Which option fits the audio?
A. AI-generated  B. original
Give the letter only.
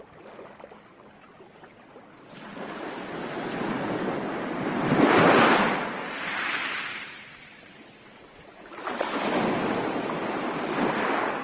B